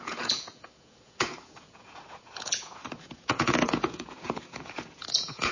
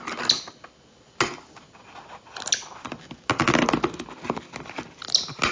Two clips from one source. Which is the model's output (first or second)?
first